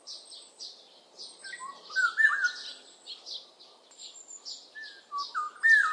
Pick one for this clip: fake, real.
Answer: real